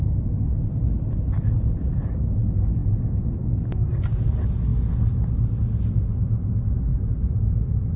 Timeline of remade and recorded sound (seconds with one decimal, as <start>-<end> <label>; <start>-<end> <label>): 0.0-2.8 recorded; 2.8-4.0 remade; 4.0-4.7 recorded; 4.7-5.5 remade; 5.5-6.9 recorded; 6.9-8.0 remade

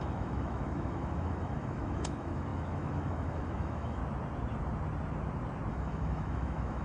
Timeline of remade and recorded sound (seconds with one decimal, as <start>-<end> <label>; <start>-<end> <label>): 0.0-4.0 remade; 4.0-5.7 recorded; 5.7-6.8 remade

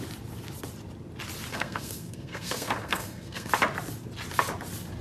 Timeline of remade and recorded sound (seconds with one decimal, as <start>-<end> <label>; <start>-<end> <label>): 0.0-1.5 recorded; 1.5-3.5 remade; 3.5-5.0 recorded

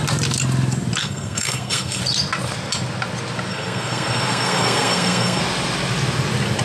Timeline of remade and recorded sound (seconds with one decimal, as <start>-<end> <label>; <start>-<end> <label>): 0.0-1.0 recorded; 1.0-2.0 remade; 2.0-3.5 recorded; 3.5-5.4 remade; 5.4-6.6 recorded